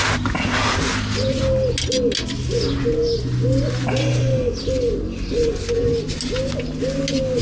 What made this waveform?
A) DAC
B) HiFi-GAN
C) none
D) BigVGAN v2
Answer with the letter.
C